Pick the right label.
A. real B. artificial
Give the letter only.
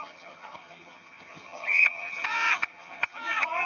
B